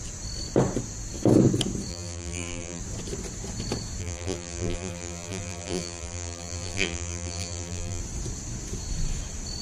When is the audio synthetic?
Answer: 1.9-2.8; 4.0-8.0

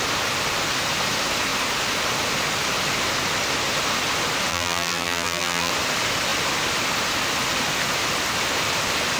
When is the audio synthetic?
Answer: 4.5-5.7

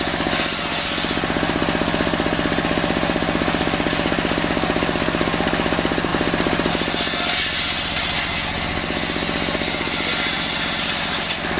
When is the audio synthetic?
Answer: 6.1-6.7

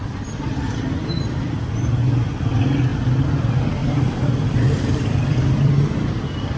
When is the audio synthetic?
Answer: 3.8-5.7

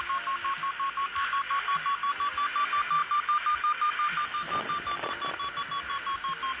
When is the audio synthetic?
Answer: none

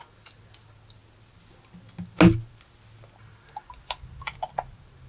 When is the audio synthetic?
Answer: none